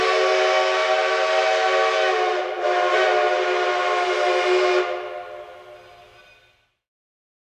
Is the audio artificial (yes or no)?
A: no